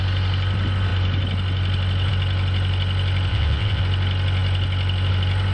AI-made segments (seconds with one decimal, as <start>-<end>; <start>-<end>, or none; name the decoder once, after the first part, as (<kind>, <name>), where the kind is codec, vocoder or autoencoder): 3.3-3.8 (vocoder, WaveNeXt)